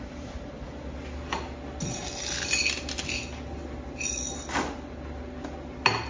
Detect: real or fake real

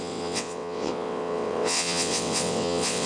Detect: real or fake fake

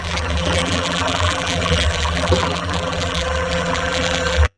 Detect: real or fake fake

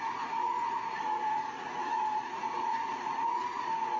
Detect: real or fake fake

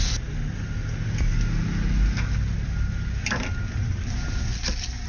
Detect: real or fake real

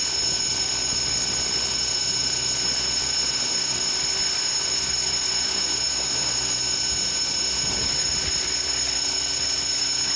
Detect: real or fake fake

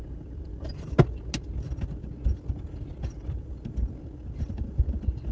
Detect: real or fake real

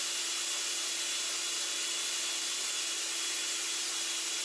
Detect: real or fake real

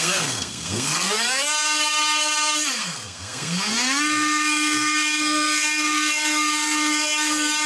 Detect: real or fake fake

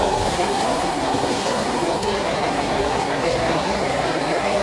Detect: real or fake fake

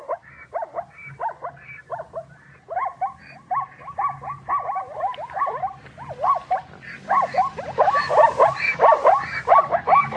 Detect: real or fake real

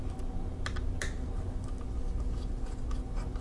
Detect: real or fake real